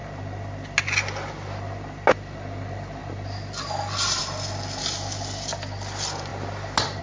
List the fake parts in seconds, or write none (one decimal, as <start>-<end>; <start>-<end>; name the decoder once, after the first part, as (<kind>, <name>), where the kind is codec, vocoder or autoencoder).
none